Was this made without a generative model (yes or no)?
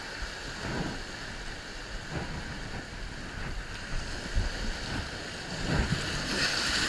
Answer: yes